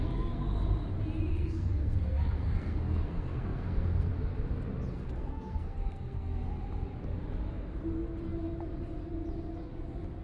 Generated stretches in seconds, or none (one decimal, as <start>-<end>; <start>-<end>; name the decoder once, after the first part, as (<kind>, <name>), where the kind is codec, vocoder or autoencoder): 0.0-0.6 (codec, SNAC); 1.3-4.1; 4.9-6.5